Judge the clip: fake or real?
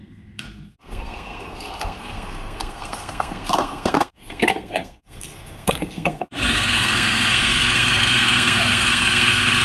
fake